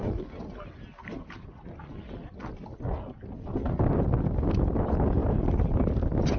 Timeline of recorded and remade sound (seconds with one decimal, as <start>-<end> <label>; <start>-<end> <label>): 0.0-5.2 recorded; 5.2-5.8 remade; 5.8-6.4 recorded